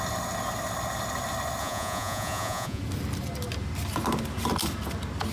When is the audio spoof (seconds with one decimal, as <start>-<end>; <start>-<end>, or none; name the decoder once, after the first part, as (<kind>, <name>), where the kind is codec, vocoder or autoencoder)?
1.6-2.8 (vocoder, Vocos)